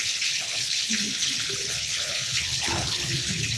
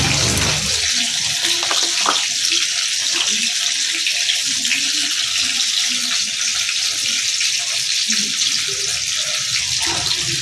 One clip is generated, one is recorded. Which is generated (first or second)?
first